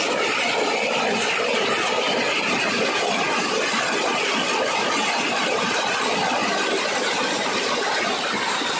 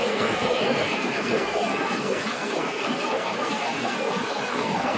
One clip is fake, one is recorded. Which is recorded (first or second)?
first